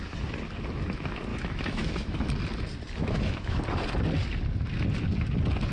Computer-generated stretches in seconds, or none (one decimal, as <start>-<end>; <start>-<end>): 1.3-2.3; 3.0-3.6